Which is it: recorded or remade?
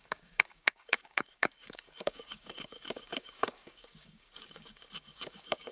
remade